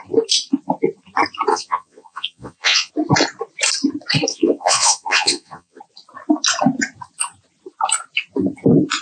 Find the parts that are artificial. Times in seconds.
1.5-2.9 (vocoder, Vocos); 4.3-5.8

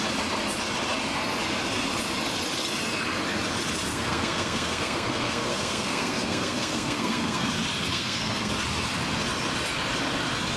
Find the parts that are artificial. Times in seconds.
3.9-7.5 (codec, SNAC); 7.9-8.5